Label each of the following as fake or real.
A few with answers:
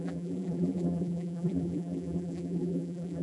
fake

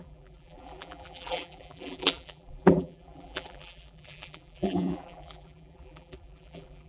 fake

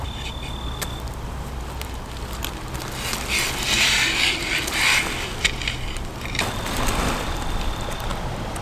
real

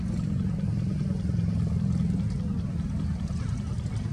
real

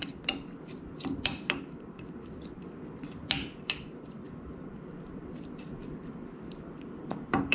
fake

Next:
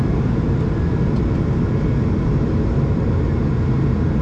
real